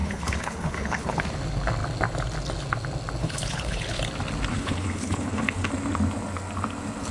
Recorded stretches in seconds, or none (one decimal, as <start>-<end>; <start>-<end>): 1.2-3.2; 4.0-4.5; 5.7-7.1